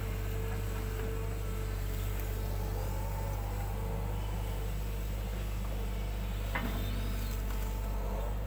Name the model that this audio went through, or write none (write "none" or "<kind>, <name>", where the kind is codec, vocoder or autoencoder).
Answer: none